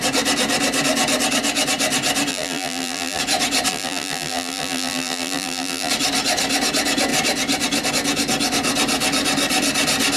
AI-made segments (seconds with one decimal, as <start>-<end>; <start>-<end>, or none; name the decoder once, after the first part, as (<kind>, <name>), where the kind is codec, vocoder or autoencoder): 2.3-3.2 (vocoder, BigVGAN v2); 3.7-5.9